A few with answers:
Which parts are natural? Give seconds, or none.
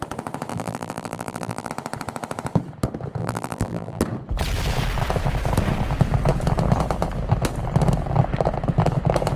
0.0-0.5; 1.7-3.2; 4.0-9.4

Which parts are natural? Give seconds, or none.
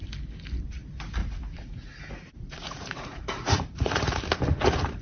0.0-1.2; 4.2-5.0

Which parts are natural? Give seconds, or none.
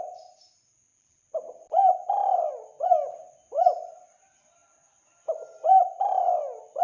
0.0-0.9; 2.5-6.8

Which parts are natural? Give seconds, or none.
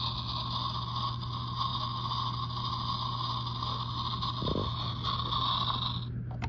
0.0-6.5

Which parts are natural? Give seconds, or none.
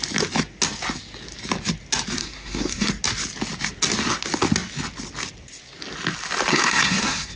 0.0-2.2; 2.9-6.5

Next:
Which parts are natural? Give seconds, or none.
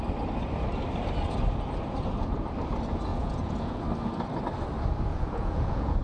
0.0-3.1; 3.8-5.1